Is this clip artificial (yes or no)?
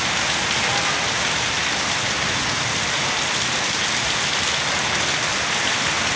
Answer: no